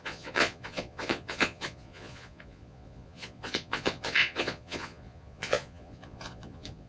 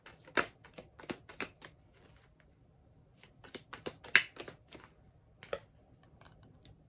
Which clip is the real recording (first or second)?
second